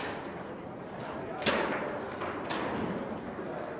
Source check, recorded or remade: recorded